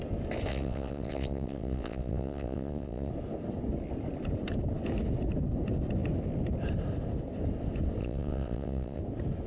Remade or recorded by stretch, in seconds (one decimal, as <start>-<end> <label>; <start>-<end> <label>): 0.0-0.5 recorded; 0.5-3.1 remade; 3.1-8.0 recorded; 8.0-9.0 remade; 9.0-9.5 recorded